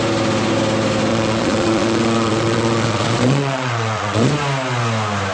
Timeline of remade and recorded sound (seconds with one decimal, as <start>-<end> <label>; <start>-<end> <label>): 0.0-1.1 recorded; 1.1-4.3 remade; 4.3-5.3 recorded